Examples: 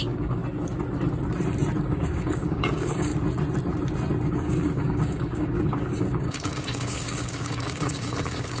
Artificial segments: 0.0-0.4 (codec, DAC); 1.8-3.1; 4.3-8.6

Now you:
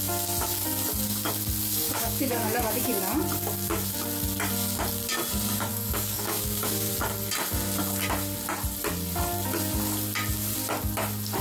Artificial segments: 1.6-3.0 (codec, DAC); 5.7-6.9

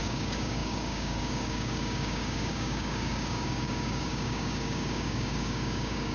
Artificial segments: 0.0-6.1 (codec, DAC)